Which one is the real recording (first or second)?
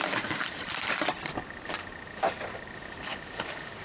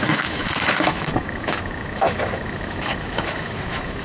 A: first